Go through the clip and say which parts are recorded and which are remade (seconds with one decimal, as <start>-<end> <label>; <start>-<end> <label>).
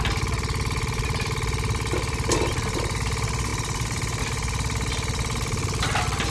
0.0-6.3 recorded